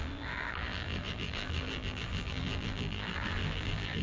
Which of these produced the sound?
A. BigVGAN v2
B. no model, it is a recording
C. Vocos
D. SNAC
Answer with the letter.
A